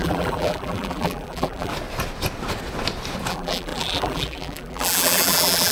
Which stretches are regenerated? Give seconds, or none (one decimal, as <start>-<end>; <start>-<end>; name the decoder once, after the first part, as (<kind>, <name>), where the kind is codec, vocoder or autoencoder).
0.0-1.7 (vocoder, BigVGAN v2); 3.3-5.7

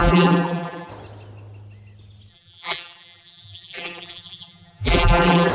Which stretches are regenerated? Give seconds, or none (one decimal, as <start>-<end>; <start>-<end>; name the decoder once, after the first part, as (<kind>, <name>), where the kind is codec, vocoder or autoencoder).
0.0-0.9 (vocoder, BigVGAN v2); 2.3-5.5

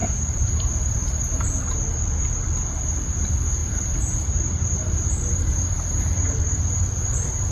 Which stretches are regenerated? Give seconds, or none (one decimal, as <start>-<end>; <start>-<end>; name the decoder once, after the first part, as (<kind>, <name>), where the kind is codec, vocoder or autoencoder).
0.0-1.5 (vocoder, BigVGAN v2); 3.6-6.6

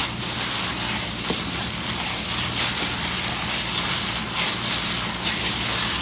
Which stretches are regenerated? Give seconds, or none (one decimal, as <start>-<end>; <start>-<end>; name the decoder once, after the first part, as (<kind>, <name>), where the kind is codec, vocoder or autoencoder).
0.0-3.3 (vocoder, BigVGAN v2)

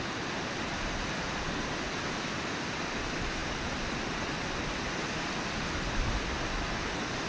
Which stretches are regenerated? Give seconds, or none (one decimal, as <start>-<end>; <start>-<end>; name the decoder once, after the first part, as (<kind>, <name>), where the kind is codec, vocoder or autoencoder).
0.0-7.3 (vocoder, BigVGAN v2)

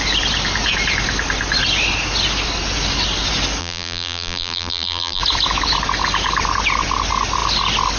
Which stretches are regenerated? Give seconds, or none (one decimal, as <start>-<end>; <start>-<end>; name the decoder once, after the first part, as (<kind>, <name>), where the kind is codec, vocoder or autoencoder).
3.6-5.2 (vocoder, BigVGAN v2)